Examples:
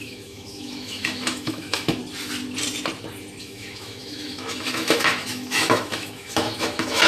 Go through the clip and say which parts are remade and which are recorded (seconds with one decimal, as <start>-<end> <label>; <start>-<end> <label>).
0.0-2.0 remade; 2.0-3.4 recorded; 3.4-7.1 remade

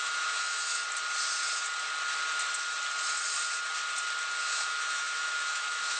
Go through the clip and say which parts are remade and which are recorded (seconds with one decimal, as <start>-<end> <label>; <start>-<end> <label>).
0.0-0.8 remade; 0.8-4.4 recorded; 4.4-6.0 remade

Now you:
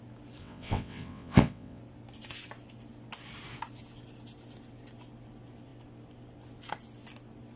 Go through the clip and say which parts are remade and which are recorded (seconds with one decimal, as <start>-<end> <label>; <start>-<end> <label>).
0.0-0.4 recorded; 0.4-1.8 remade; 1.8-7.6 recorded

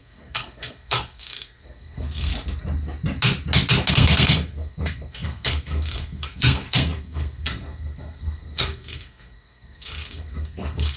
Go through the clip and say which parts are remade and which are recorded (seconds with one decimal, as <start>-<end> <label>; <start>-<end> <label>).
0.0-2.3 remade; 2.3-3.9 recorded; 3.9-11.0 remade